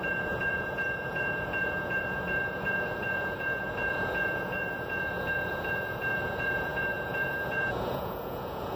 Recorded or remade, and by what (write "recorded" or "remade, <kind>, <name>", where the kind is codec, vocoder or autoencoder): remade, vocoder, Vocos